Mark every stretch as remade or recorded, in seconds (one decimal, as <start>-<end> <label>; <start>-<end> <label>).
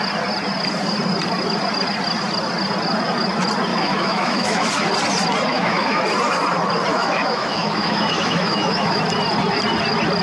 0.0-3.7 recorded; 3.7-4.7 remade; 4.7-5.5 recorded; 5.5-6.0 remade; 6.0-6.9 recorded; 6.9-9.0 remade; 9.0-10.2 recorded